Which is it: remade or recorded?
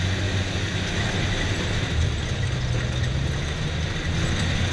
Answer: recorded